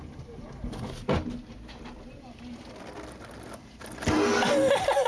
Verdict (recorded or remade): recorded